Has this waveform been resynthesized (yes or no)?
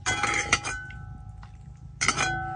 no